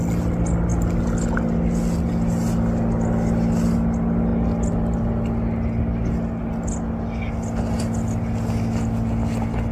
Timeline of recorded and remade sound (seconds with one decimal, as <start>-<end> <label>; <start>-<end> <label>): 0.0-9.7 recorded